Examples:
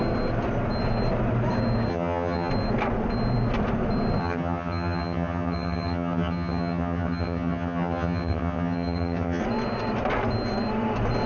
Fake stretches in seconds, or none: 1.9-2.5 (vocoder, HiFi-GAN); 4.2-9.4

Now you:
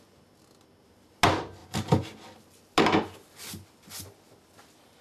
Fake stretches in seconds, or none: none

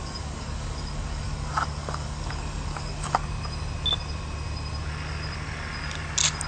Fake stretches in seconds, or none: 0.0-3.2 (codec, DAC)

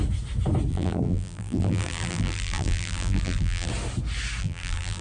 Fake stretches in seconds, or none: 0.7-3.7 (vocoder, BigVGAN v2); 4.4-5.0

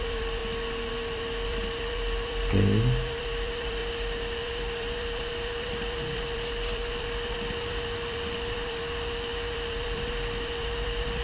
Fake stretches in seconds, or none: 0.0-0.4 (vocoder, BigVGAN v2); 0.9-3.8; 4.4-11.2

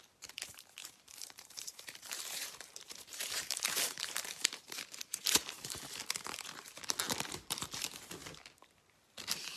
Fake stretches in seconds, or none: 0.8-5.8 (vocoder, BigVGAN v2)

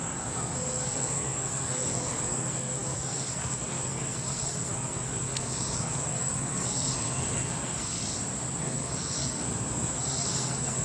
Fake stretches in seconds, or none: 0.0-8.0 (codec, SNAC); 8.6-10.8

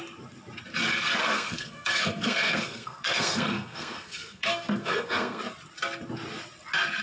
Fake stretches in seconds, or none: 1.2-5.4 (codec, SNAC)